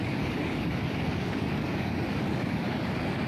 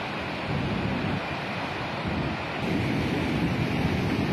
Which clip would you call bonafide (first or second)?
second